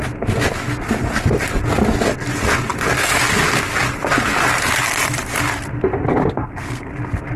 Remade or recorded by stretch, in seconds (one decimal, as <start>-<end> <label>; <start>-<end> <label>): 0.0-6.2 recorded; 6.2-6.9 remade; 6.9-7.4 recorded